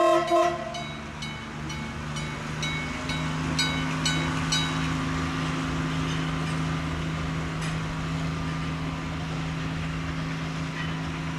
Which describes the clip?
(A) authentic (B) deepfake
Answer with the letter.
A